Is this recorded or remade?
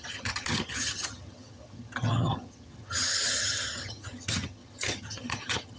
remade